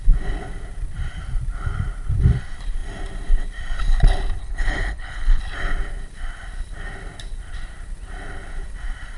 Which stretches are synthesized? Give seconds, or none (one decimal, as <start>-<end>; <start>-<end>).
4.4-5.4